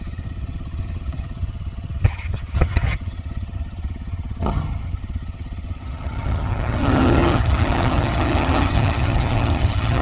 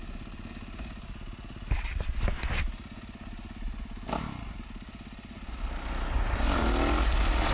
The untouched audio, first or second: second